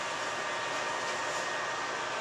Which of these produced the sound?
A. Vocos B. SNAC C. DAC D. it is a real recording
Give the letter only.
D